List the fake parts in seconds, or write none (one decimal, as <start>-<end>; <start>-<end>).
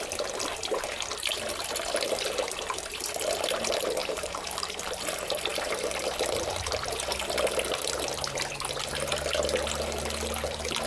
4.0-4.8